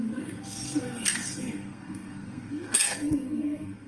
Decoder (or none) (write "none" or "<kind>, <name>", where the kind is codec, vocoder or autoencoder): codec, SNAC